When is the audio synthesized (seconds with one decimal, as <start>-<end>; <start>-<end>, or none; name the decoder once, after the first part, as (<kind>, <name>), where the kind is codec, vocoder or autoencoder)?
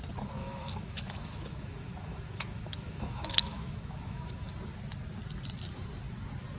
0.4-4.4 (autoencoder, DAC-VAE)